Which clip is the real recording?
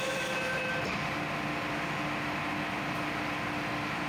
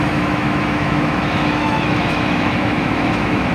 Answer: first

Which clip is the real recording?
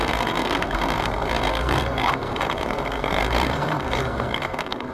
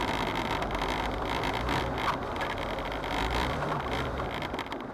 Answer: second